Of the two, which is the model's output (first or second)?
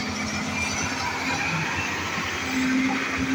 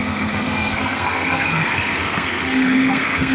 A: second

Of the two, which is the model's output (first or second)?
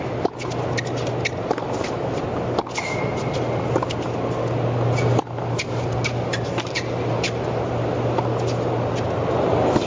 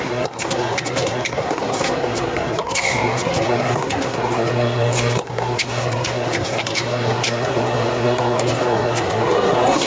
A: second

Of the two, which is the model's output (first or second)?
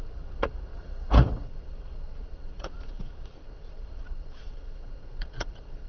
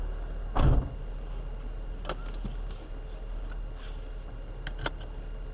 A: first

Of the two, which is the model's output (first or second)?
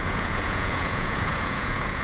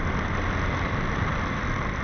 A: first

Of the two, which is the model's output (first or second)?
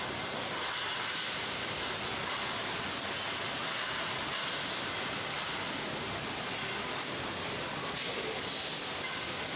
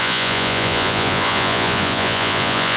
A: second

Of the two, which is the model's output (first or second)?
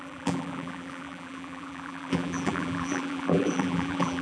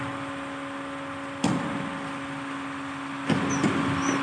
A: first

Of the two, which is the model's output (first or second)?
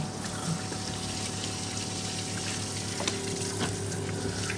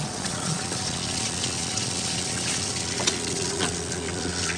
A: second